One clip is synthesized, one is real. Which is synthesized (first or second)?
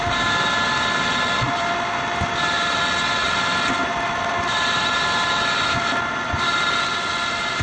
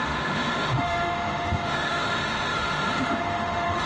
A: second